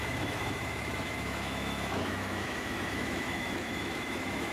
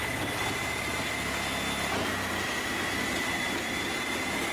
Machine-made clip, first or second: first